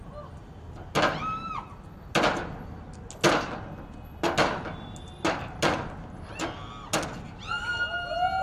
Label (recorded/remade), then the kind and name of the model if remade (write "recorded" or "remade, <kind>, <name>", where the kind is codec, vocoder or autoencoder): recorded